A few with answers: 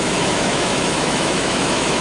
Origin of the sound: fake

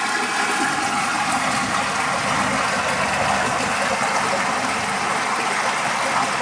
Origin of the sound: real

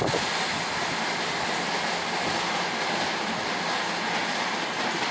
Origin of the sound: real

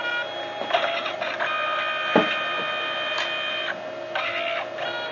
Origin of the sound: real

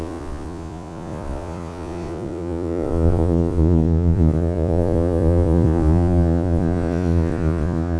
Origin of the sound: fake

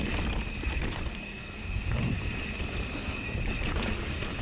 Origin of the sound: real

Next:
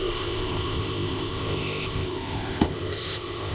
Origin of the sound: fake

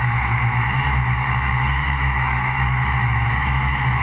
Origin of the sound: fake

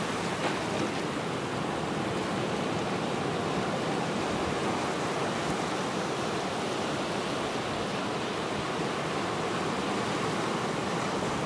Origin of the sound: real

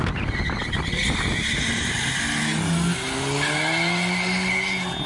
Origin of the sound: real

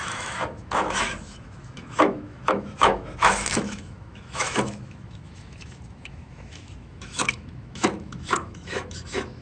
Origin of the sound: fake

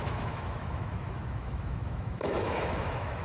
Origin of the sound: fake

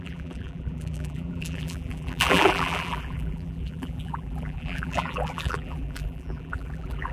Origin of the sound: fake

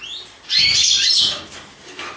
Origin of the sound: real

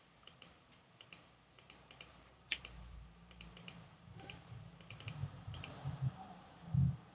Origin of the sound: fake